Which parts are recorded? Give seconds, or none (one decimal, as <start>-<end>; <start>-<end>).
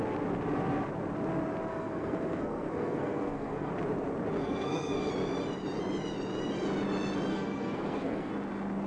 0.0-1.7; 3.7-4.4; 5.1-7.3; 8.3-8.9